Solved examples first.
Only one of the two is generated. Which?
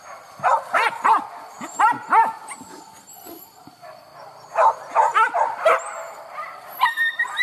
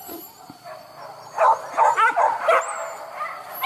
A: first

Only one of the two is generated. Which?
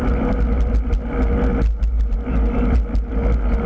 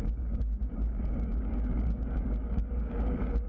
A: second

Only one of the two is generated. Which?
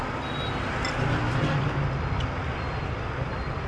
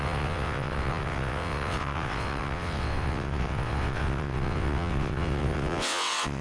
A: second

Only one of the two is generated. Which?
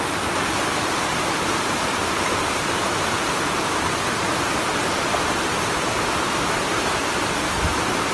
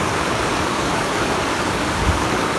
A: second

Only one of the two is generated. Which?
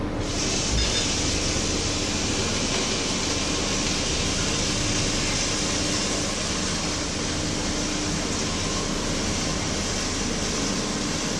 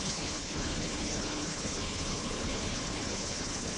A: second